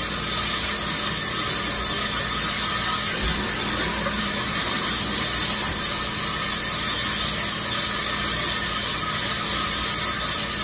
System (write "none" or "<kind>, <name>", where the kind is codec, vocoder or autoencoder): none